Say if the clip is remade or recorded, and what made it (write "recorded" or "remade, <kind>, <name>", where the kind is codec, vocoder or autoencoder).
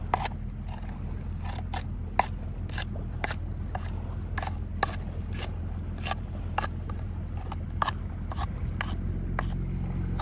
recorded